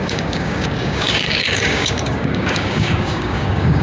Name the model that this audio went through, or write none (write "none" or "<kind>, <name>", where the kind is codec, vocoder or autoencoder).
codec, DAC